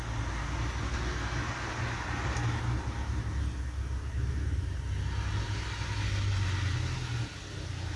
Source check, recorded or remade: recorded